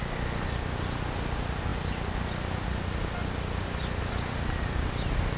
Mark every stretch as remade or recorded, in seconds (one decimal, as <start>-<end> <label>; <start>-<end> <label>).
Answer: 0.0-5.4 recorded